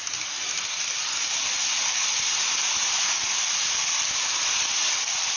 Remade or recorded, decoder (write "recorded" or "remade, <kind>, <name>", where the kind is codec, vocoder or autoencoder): recorded